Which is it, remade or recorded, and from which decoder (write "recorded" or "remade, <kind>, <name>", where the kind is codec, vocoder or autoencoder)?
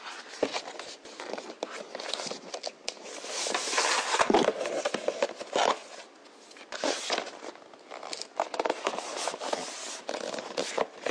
recorded